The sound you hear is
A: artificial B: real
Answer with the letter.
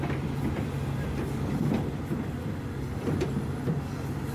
A